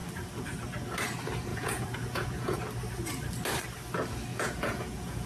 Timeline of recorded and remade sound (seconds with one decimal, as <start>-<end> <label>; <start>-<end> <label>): 0.0-1.5 recorded; 1.5-2.6 remade; 2.6-4.3 recorded; 4.3-5.3 remade

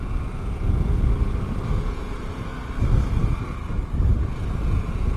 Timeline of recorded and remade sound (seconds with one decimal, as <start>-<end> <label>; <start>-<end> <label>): 0.0-1.2 remade; 1.2-1.7 recorded; 1.7-2.5 remade; 2.5-4.2 recorded; 4.2-5.2 remade

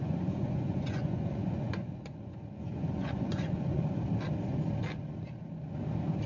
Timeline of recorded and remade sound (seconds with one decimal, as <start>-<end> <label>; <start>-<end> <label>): 0.0-3.8 remade; 3.8-6.3 recorded

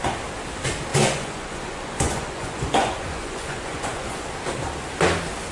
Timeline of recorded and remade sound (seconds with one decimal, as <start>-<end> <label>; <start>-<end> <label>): 0.0-0.9 recorded; 0.9-4.2 remade; 4.2-5.5 recorded

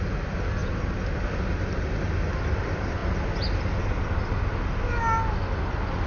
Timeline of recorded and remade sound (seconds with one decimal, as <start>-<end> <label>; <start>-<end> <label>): 0.0-6.1 recorded